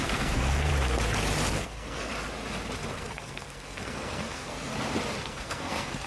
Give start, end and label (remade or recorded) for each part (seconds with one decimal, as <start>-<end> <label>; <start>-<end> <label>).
0.0-0.7 remade; 0.7-1.5 recorded; 1.5-2.1 remade; 2.1-2.9 recorded; 2.9-4.7 remade; 4.7-5.2 recorded; 5.2-6.1 remade